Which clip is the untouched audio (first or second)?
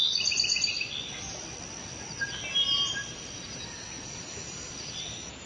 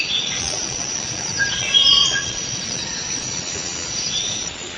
first